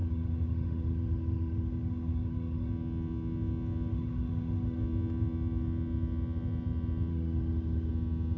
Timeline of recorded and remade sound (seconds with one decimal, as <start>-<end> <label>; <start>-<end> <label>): 0.0-2.7 remade; 2.7-3.9 recorded; 3.9-4.8 remade; 4.8-7.1 recorded; 7.1-7.9 remade; 7.9-8.4 recorded